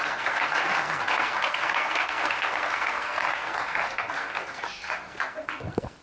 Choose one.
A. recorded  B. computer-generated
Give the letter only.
B